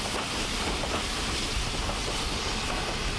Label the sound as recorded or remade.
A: recorded